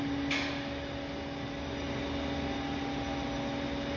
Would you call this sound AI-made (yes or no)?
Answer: no